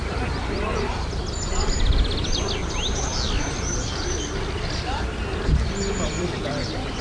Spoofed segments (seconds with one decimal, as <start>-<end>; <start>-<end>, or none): none